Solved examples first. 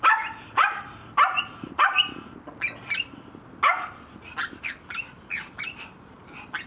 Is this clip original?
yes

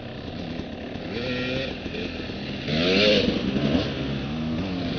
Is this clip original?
yes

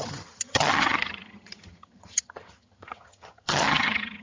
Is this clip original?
no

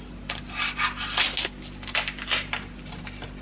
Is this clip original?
yes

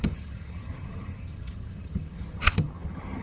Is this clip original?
no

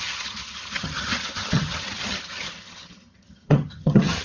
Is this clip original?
no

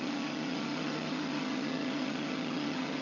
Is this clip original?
no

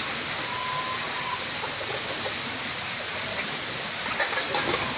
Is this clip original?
yes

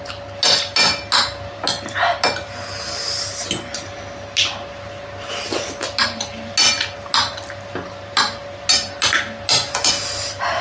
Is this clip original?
yes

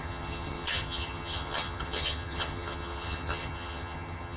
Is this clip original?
no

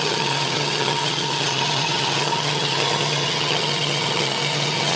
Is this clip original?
no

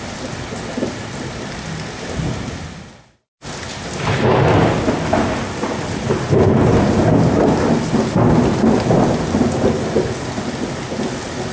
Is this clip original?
yes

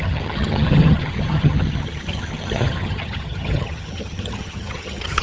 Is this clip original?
no